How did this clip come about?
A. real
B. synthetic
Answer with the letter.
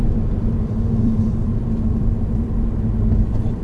B